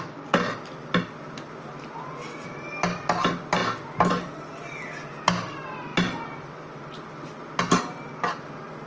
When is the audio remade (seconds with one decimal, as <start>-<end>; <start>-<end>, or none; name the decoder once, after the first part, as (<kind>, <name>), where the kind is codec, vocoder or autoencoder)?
none